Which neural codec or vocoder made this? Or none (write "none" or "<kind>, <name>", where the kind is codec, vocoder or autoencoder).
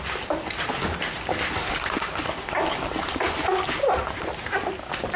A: none